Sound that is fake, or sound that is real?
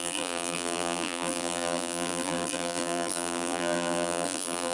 fake